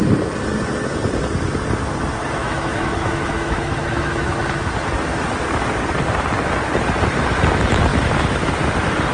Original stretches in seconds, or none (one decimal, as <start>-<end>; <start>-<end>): 0.0-2.4; 4.7-7.9; 8.6-9.1